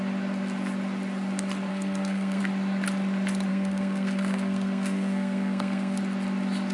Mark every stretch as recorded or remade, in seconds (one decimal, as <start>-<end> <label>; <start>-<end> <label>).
0.0-1.7 recorded; 1.7-2.4 remade; 2.4-3.5 recorded; 3.5-6.0 remade; 6.0-6.7 recorded